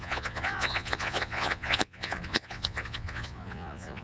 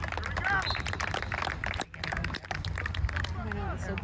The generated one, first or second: first